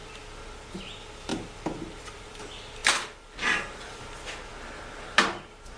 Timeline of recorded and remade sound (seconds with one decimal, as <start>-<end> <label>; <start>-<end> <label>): 0.0-1.3 recorded; 1.3-2.4 remade; 2.4-2.8 recorded; 2.8-4.0 remade; 4.0-5.8 recorded